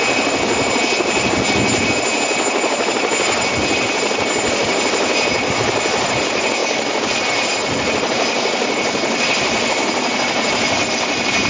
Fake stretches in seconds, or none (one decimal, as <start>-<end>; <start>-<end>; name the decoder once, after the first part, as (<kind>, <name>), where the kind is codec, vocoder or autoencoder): none